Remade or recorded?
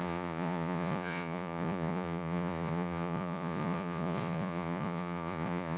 remade